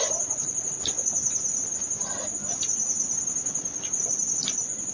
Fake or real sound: real